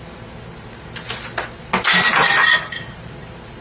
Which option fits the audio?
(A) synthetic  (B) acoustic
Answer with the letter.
B